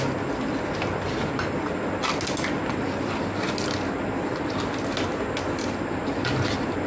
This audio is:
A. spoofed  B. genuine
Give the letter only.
B